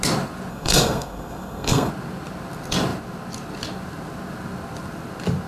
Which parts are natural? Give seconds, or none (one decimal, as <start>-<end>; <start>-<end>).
0.0-0.5; 1.9-5.5